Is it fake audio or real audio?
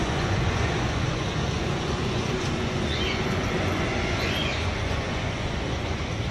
fake